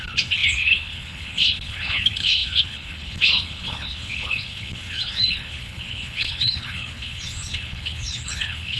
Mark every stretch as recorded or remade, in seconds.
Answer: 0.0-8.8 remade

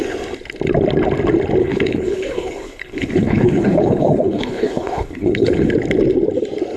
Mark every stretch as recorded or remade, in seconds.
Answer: 0.0-1.6 recorded; 1.6-5.7 remade; 5.7-6.8 recorded

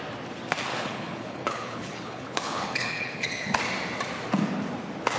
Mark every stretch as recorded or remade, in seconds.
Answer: 0.0-0.7 recorded; 0.7-3.6 remade; 3.6-5.2 recorded

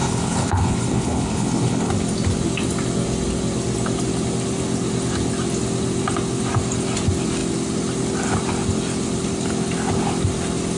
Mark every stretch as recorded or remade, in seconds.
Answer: 0.0-1.9 remade; 1.9-10.8 recorded

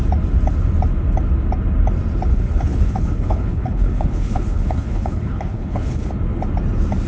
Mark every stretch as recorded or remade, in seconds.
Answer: 0.0-2.3 recorded; 2.3-6.1 remade; 6.1-7.1 recorded

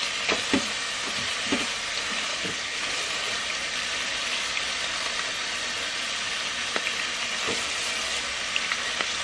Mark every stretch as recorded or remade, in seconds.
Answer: 0.0-2.3 recorded; 2.3-2.8 remade; 2.8-9.2 recorded

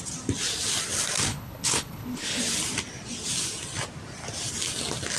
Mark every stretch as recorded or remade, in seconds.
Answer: 0.0-1.3 recorded; 1.3-2.4 remade; 2.4-5.2 recorded

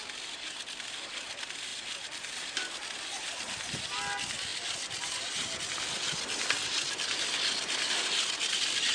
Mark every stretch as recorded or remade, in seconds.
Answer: 0.0-8.9 recorded